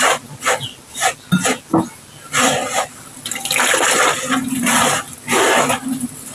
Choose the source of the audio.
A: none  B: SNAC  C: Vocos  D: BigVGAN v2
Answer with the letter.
A